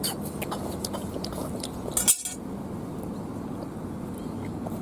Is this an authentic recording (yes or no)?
yes